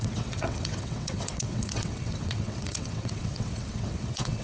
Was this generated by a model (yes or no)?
yes